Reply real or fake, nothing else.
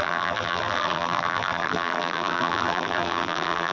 fake